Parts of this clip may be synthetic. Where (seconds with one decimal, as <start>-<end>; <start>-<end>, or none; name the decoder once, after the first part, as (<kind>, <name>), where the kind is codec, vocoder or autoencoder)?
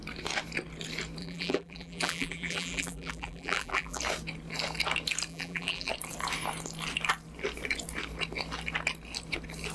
1.2-4.0 (vocoder, BigVGAN v2); 5.3-5.9